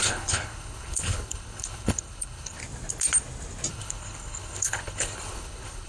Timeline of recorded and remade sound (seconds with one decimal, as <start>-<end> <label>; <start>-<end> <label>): 0.0-2.6 remade; 2.6-3.7 recorded; 3.7-5.9 remade